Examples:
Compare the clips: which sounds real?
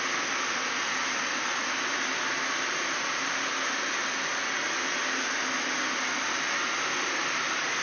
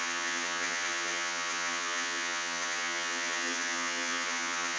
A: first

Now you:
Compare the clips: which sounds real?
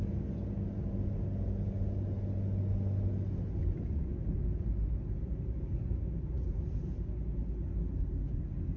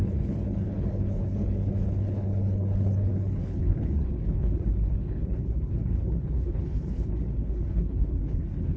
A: first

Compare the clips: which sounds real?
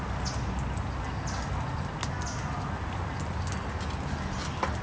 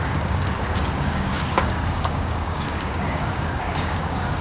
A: first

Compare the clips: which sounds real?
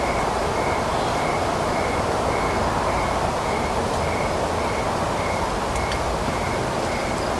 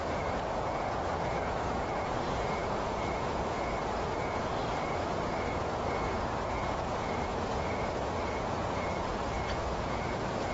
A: first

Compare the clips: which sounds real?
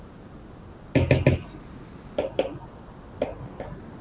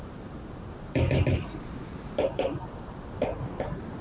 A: first